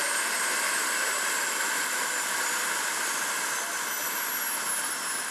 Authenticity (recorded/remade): recorded